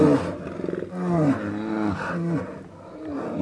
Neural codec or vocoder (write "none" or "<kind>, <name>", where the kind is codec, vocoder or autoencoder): none